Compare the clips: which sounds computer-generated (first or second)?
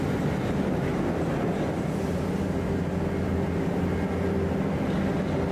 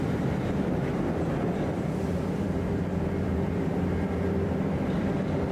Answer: second